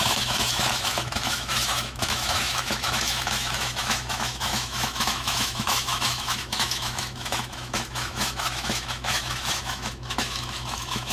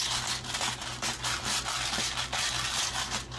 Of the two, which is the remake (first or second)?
first